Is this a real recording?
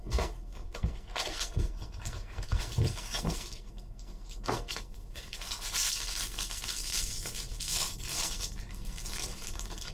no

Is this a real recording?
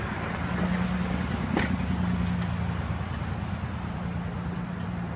yes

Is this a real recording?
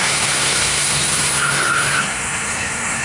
no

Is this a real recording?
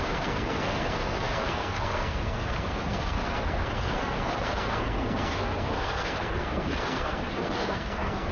no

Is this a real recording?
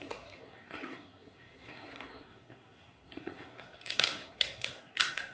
no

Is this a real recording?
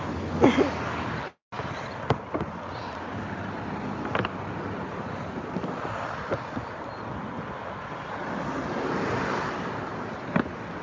yes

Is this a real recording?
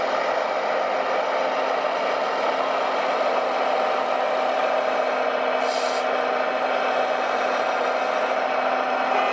yes